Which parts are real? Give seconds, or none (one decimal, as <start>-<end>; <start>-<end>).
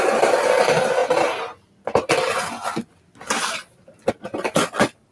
0.0-5.1